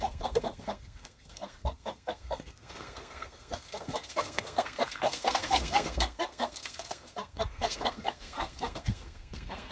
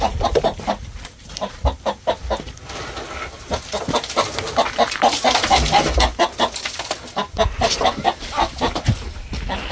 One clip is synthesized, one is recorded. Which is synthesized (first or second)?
first